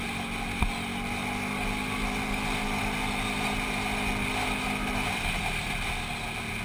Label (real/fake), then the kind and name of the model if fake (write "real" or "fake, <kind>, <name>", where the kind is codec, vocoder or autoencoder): real